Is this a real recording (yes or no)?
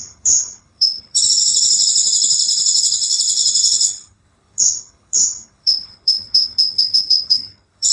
no